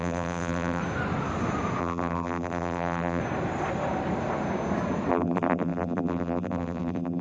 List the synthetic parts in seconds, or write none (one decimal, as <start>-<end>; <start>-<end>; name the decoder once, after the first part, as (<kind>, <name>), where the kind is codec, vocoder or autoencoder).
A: 0.0-0.8 (vocoder, BigVGAN v2); 1.8-3.2; 5.1-7.2